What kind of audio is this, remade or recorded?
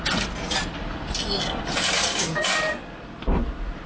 recorded